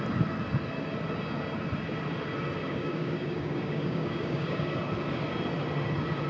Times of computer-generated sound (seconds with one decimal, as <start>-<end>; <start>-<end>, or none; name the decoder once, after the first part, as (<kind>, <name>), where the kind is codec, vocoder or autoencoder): 2.6-4.7 (codec, DAC)